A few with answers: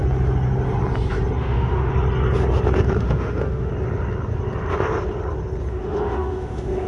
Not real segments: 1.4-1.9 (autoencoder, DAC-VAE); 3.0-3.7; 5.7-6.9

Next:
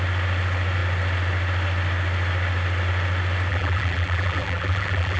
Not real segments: 3.5-5.2 (vocoder, BigVGAN v2)

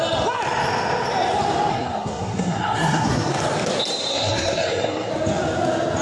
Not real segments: 1.7-3.4 (codec, SNAC); 4.1-5.1

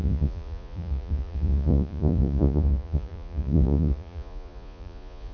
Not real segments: 0.0-5.3 (vocoder, Vocos)

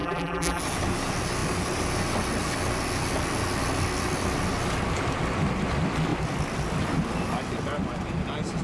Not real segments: 0.0-0.6 (vocoder, BigVGAN v2)